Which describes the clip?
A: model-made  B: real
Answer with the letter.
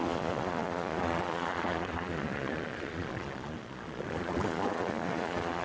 A